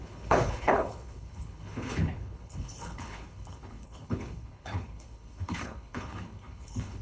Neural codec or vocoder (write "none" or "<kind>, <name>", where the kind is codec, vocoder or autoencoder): codec, HILCodec